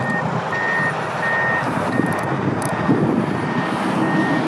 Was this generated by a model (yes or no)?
no